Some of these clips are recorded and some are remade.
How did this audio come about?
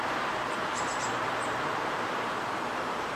remade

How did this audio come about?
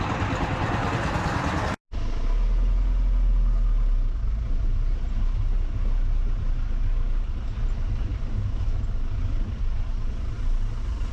recorded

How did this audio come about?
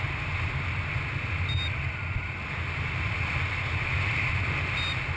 recorded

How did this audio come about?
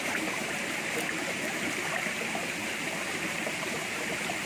recorded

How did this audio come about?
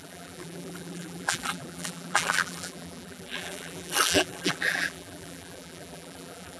remade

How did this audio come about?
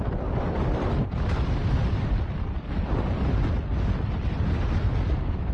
remade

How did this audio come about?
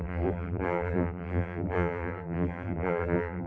remade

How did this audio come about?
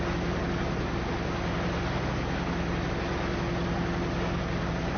recorded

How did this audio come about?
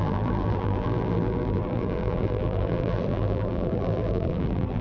remade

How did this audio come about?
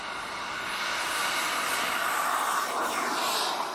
recorded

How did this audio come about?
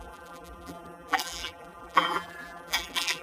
remade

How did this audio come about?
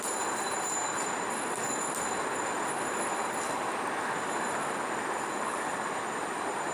recorded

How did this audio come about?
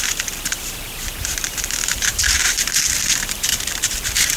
remade